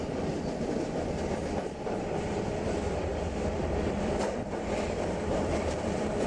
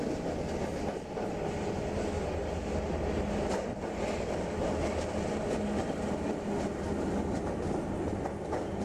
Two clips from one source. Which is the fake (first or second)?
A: first